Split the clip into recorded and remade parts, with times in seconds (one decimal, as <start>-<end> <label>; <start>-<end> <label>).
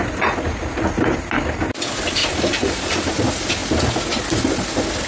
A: 0.0-2.2 recorded; 2.2-3.1 remade; 3.1-5.1 recorded